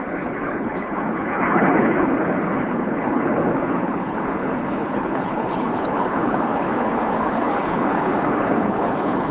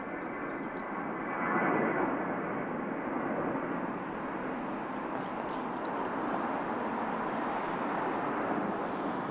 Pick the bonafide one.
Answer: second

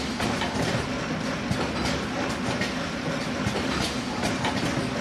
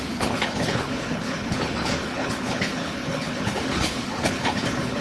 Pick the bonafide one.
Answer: first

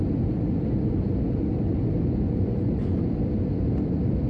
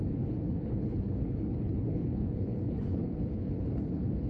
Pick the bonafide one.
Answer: first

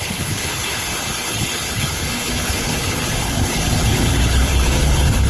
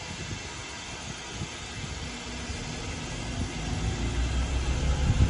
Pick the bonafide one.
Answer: second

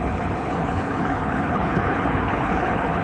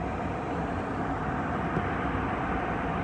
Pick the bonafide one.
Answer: second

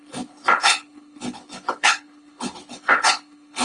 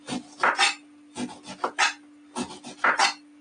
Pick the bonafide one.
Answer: second